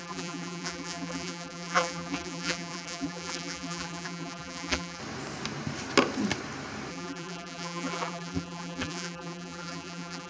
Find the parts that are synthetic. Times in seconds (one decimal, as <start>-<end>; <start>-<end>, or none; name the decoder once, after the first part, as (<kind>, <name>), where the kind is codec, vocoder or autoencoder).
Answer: 0.0-5.0 (vocoder, BigVGAN v2); 6.9-10.3